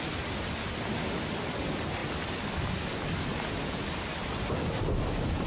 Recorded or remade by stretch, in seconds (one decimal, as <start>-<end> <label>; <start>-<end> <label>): 0.0-5.5 recorded